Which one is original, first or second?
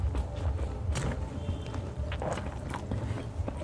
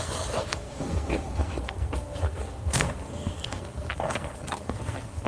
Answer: first